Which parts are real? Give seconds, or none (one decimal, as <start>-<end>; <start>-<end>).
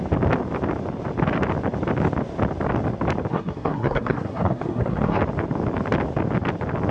0.0-3.3; 5.2-6.9